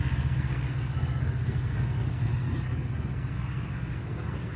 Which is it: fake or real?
fake